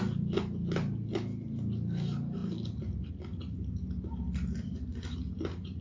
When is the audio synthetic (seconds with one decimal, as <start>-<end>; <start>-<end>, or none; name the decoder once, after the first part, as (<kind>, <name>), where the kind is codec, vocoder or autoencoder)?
none